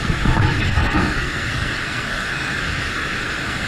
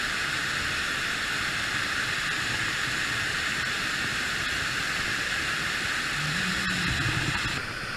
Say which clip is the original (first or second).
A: second